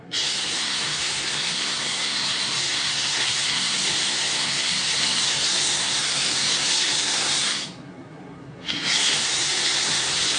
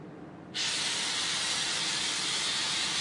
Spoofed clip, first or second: first